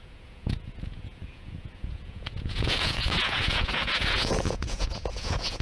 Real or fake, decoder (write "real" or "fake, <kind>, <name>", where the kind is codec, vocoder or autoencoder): fake, vocoder, Vocos